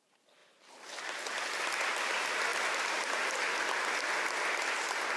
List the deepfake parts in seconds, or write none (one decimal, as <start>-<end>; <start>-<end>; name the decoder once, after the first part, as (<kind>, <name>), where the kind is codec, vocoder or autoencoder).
none